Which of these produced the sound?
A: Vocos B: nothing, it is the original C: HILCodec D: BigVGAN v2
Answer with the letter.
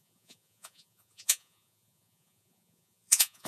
A